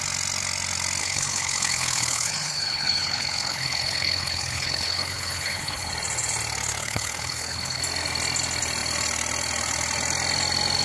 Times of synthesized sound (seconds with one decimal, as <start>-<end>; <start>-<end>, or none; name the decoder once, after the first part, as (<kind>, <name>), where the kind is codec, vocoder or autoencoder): 1.0-5.9 (codec, HILCodec); 6.8-7.8